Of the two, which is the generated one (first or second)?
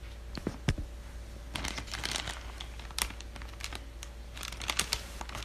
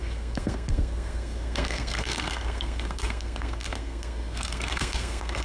second